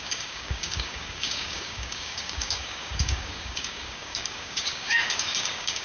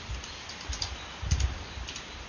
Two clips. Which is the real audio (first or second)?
second